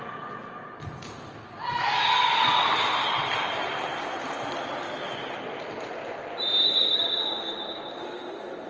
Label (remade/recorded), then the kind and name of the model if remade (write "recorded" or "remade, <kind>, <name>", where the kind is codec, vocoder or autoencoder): recorded